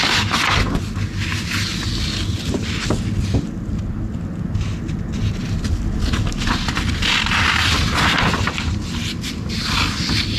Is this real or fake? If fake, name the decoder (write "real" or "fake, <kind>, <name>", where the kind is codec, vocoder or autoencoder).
real